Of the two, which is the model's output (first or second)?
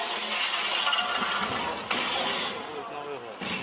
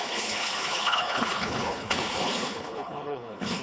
second